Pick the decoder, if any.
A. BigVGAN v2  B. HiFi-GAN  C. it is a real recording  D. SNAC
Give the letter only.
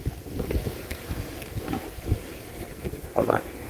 D